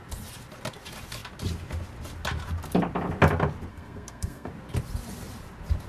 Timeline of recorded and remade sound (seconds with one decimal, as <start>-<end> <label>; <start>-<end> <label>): 0.0-3.7 recorded; 3.7-4.5 remade; 4.5-5.9 recorded